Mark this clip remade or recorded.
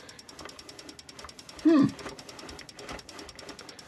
recorded